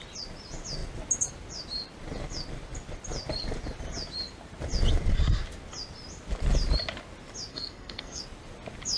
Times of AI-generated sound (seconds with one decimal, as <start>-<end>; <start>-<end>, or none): 7.5-8.2

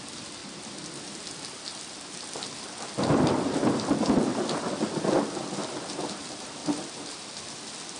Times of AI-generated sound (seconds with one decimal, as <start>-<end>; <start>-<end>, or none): none

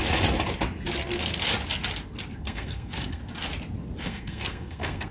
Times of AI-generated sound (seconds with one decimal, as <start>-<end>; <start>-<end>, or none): 2.3-3.2; 4.0-5.1

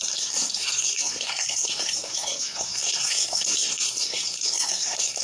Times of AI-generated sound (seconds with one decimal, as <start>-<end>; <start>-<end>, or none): 0.0-5.2

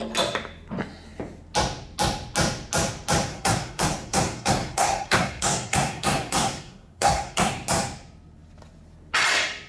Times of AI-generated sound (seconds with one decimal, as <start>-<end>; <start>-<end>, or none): 3.3-7.5

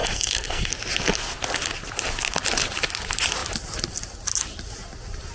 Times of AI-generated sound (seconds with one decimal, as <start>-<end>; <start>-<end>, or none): 0.0-0.7

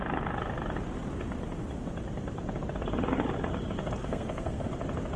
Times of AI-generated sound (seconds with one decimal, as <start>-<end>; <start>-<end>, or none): 4.0-4.7

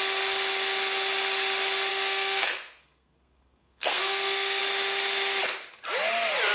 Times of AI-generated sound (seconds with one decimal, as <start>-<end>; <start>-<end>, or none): 1.9-4.6